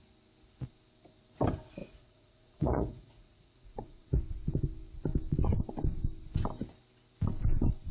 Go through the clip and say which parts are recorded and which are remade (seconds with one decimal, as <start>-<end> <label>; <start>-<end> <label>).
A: 0.0-1.8 recorded; 1.8-4.2 remade; 4.2-7.9 recorded